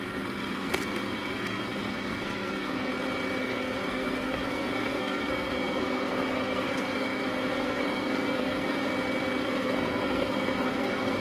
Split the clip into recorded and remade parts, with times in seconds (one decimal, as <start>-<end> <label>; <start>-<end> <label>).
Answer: 0.0-2.9 remade; 2.9-3.4 recorded; 3.4-8.9 remade; 8.9-9.4 recorded; 9.4-11.2 remade